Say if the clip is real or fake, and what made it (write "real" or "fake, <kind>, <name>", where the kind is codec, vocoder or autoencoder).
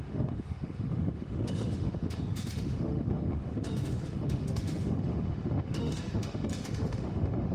fake, autoencoder, DAC-VAE